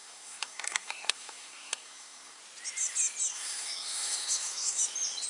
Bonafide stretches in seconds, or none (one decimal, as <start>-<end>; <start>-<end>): 2.4-3.3; 4.8-5.3